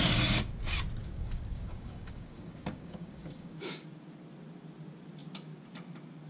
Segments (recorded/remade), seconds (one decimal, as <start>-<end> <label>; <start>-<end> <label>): 0.0-1.0 recorded; 1.0-3.9 remade; 3.9-6.3 recorded